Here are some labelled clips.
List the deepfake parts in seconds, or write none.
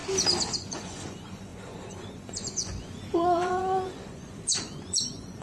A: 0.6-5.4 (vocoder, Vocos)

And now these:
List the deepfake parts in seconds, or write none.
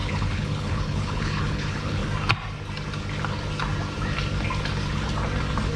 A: 0.0-2.0 (codec, HILCodec)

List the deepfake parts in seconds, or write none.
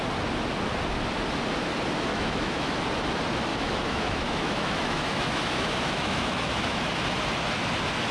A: 2.1-2.7 (autoencoder, DAC-VAE); 3.5-6.9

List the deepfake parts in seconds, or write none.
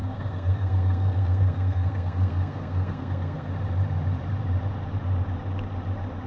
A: 0.0-3.5 (codec, SNAC)